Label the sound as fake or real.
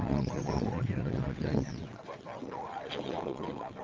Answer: fake